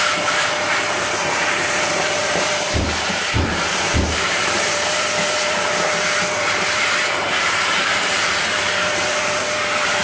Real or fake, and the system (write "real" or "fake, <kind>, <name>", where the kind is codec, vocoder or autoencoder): fake, vocoder, BigVGAN v2